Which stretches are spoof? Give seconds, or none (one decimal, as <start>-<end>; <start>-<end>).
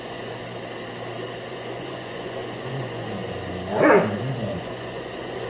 0.0-0.4; 1.5-3.2; 4.6-5.5